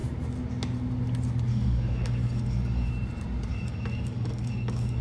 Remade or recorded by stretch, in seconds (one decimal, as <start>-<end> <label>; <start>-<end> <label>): 0.0-1.5 recorded; 1.5-2.9 remade; 2.9-3.5 recorded; 3.5-5.0 remade